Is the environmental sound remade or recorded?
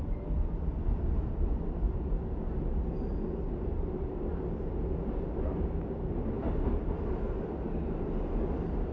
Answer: recorded